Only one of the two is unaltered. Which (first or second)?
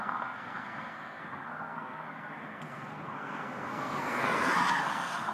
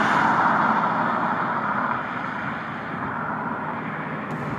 second